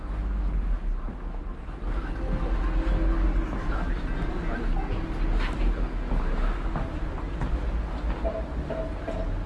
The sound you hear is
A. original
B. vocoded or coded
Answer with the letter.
A